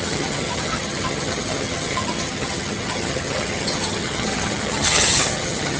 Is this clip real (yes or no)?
no